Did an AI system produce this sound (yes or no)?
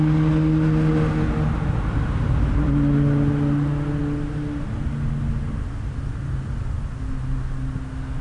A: no